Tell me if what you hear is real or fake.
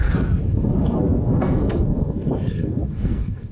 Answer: fake